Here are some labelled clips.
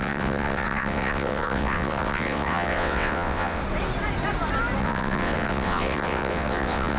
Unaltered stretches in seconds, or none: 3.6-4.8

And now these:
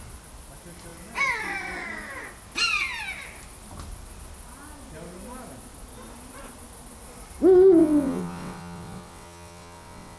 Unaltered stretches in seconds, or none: 0.0-7.8

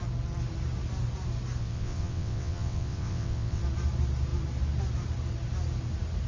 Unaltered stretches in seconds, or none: 0.0-1.6; 3.6-6.3

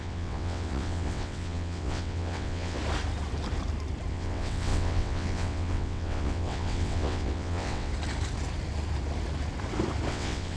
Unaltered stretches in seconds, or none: 2.8-4.1; 7.9-10.1